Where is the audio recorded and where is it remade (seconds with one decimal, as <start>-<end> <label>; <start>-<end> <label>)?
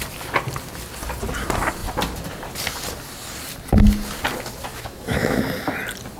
0.0-4.7 recorded; 4.7-5.4 remade; 5.4-6.2 recorded